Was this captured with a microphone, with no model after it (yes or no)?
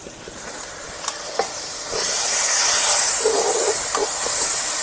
yes